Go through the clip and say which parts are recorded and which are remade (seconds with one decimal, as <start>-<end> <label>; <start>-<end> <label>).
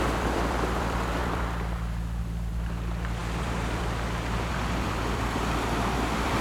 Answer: 0.0-6.4 remade